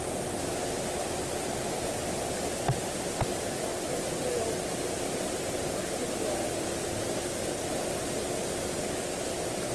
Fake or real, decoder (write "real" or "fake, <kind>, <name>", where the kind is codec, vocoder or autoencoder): real